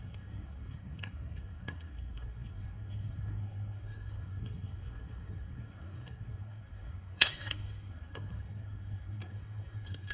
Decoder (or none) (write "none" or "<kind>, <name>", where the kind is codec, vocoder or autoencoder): codec, SNAC